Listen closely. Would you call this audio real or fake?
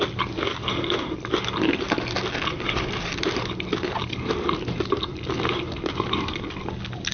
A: real